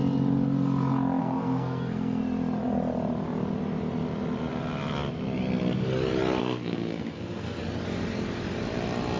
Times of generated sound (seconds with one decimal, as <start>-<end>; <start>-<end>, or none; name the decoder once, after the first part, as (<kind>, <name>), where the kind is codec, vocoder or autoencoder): 1.2-2.2 (codec, SNAC); 6.4-7.6